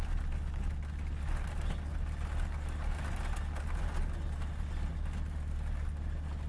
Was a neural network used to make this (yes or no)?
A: no